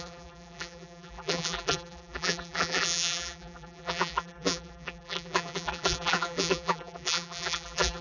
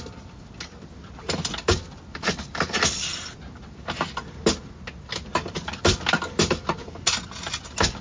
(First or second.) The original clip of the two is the second